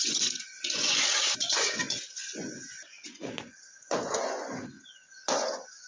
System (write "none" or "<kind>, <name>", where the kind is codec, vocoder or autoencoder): vocoder, Vocos